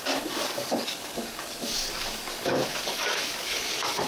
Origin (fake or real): fake